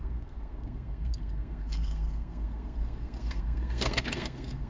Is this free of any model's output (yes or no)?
no